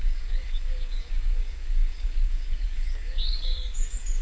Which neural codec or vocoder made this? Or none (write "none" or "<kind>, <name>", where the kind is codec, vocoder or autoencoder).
codec, DAC